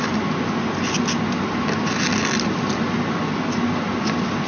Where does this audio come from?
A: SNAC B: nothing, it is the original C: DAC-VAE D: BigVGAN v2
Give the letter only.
B